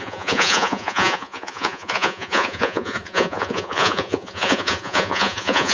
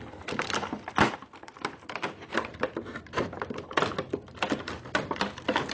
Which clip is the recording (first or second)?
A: second